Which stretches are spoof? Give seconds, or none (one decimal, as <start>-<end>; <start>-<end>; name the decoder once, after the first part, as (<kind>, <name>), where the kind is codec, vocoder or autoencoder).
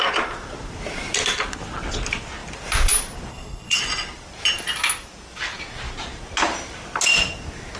3.3-3.8 (codec, SNAC)